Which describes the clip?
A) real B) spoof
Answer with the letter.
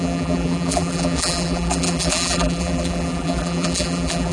B